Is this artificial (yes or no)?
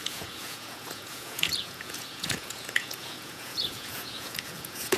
yes